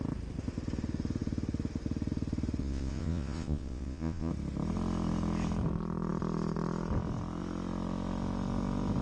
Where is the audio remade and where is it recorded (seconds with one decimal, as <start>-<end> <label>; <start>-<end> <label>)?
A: 0.0-2.6 recorded; 2.6-4.3 remade; 4.3-9.0 recorded